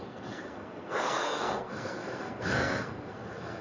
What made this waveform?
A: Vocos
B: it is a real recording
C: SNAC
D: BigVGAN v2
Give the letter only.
C